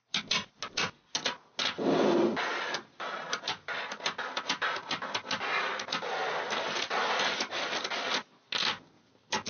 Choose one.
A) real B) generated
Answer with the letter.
A